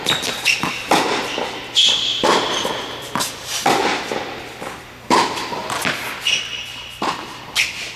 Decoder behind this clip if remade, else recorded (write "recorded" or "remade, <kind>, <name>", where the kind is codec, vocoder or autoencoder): recorded